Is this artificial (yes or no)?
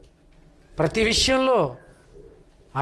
no